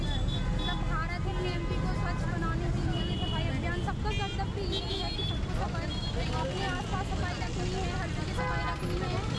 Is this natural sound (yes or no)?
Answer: yes